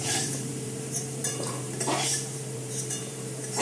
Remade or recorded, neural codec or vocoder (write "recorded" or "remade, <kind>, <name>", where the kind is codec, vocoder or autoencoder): remade, vocoder, BigVGAN v2